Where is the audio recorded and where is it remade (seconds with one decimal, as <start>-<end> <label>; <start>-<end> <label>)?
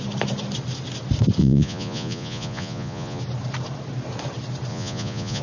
0.0-1.4 recorded; 1.4-3.2 remade; 3.2-4.7 recorded; 4.7-5.4 remade